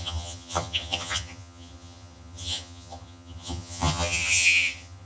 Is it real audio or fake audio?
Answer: fake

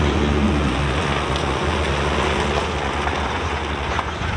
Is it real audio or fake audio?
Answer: fake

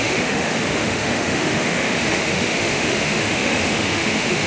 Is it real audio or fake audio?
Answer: fake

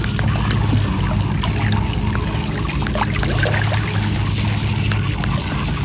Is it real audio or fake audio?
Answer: real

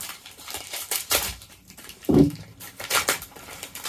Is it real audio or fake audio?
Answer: fake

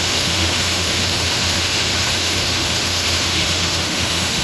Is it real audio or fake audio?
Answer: fake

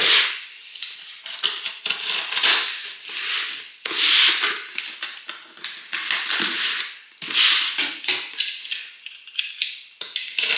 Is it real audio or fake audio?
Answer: real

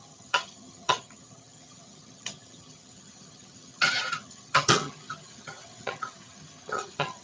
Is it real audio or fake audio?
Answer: fake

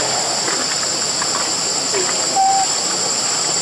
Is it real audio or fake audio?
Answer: fake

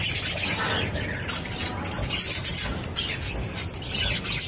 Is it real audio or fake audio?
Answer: real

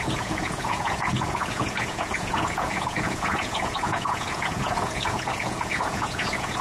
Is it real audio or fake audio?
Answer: fake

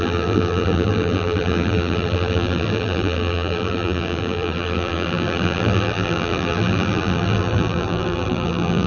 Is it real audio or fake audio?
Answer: fake